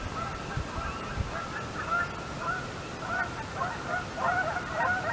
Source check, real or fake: real